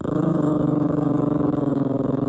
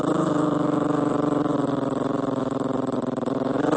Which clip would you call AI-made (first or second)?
first